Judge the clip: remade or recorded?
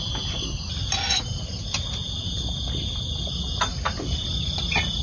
recorded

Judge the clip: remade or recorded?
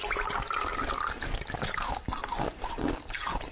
recorded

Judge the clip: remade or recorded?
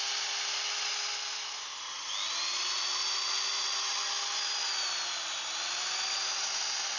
recorded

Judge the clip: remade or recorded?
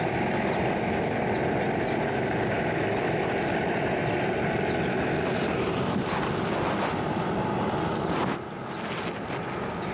recorded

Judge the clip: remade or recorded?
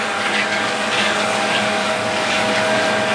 remade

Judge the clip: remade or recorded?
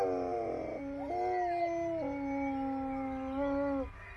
recorded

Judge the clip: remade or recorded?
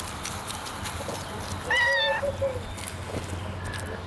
recorded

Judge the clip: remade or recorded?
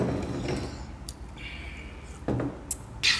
recorded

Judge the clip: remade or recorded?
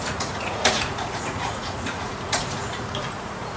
remade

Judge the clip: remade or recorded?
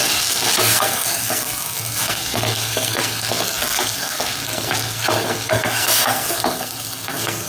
remade